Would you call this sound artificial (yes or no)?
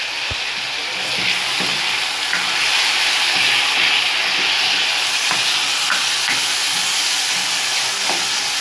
no